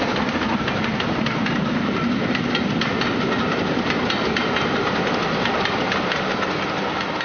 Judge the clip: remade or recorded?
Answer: recorded